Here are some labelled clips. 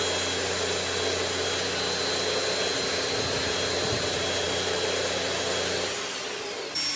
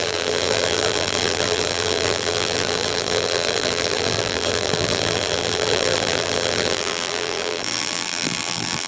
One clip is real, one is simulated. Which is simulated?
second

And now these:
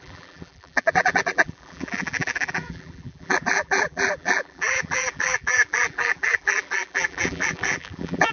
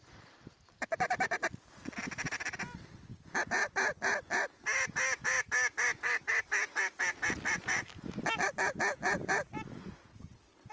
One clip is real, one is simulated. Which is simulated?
first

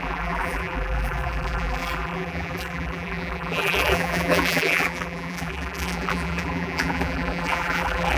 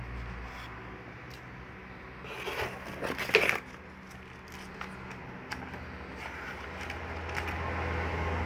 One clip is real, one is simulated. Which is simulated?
first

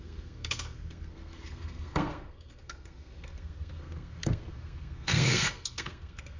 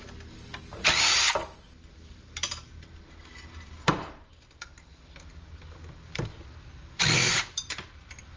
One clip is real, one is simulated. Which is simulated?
first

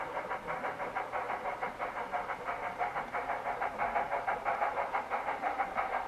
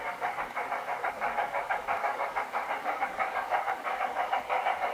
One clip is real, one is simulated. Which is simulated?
second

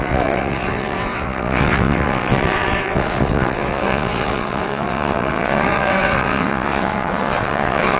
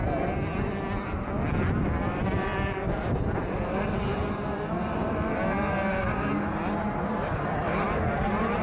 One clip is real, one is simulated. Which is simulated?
first